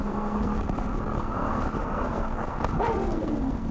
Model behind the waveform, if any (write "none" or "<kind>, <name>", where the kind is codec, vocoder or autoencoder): codec, SNAC